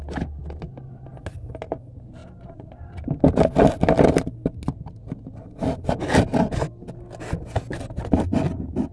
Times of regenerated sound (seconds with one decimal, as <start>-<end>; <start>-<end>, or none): none